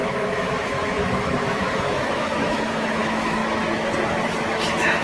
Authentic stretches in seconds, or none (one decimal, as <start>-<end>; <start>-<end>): 3.4-4.5